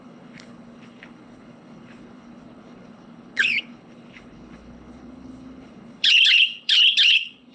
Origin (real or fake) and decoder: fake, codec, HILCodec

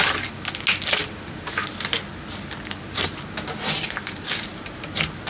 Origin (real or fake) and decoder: real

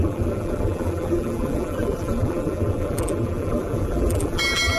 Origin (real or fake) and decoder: fake, vocoder, BigVGAN v2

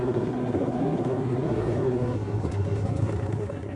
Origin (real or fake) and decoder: fake, codec, SNAC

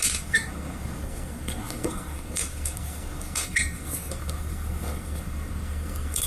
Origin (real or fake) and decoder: fake, codec, SNAC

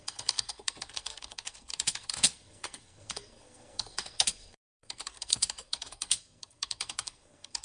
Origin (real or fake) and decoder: fake, codec, SNAC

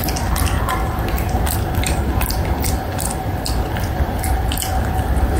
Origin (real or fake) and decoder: real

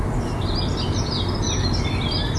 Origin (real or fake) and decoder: real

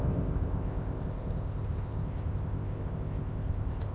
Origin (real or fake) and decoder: fake, codec, ZipCodec